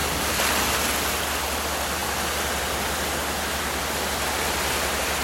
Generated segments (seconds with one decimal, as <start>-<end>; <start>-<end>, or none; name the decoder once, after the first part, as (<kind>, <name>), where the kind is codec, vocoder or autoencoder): none